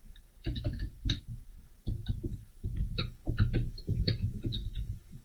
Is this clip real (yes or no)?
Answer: no